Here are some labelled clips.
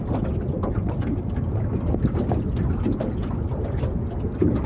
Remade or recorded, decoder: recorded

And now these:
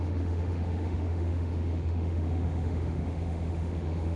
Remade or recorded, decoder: remade, autoencoder, DAC-VAE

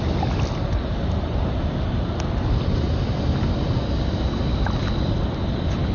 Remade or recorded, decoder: recorded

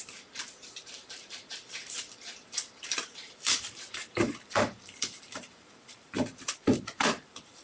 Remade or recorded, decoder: remade, vocoder, BigVGAN v2